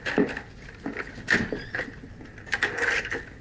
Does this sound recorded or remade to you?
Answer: recorded